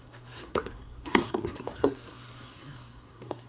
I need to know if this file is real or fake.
fake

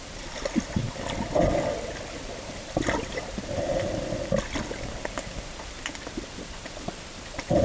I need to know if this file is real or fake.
real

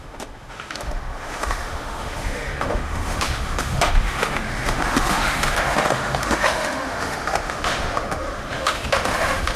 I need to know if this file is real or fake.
fake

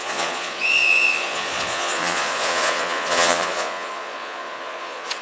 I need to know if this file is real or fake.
fake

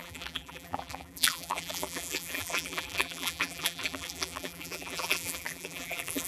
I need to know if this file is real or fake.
fake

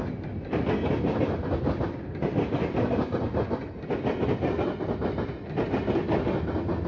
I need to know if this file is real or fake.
real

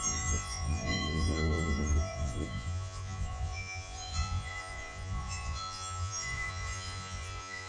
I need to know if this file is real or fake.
fake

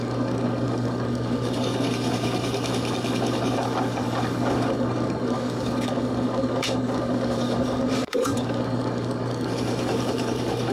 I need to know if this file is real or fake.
fake